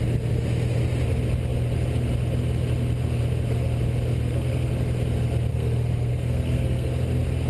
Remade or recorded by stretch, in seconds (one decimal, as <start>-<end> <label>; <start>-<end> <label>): 0.0-4.2 recorded; 4.2-4.7 remade; 4.7-5.5 recorded; 5.5-6.9 remade; 6.9-7.5 recorded